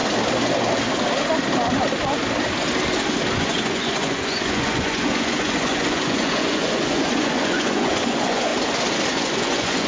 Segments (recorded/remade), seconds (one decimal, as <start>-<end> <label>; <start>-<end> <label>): 0.0-3.4 recorded; 3.4-8.5 remade; 8.5-9.1 recorded; 9.1-9.9 remade